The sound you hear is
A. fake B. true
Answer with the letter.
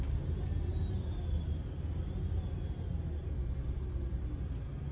B